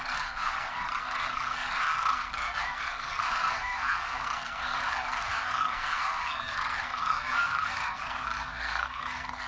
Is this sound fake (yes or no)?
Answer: yes